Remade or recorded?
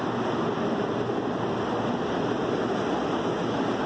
recorded